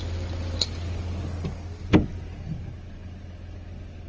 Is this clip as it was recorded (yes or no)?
yes